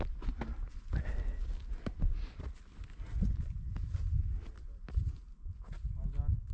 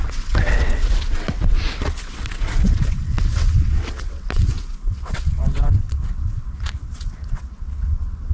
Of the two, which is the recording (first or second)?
first